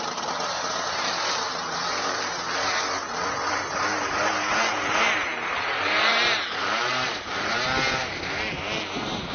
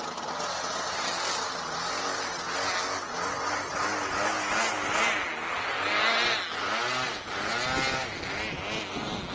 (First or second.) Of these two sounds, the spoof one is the first